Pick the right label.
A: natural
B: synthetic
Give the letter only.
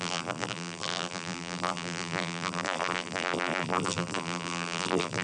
B